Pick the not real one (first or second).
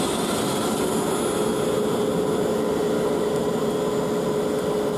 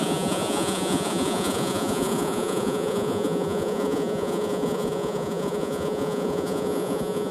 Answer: second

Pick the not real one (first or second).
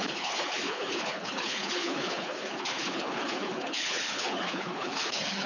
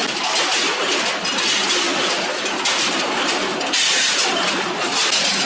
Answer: first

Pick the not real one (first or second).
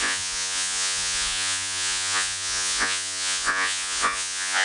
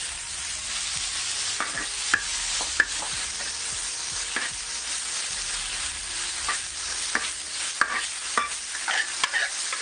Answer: first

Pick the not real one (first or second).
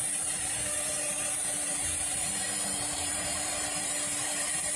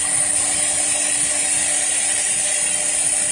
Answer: first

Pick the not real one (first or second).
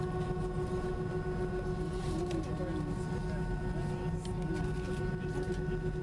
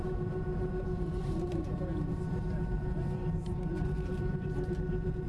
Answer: second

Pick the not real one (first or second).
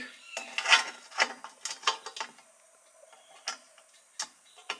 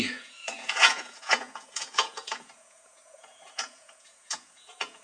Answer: second